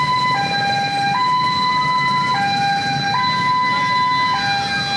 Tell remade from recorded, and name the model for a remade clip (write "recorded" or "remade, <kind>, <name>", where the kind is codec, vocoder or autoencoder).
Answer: recorded